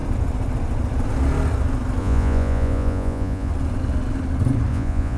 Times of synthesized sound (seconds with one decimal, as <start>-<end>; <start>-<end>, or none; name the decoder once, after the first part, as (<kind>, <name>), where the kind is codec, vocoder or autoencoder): 2.0-3.5 (vocoder, Vocos); 4.7-5.2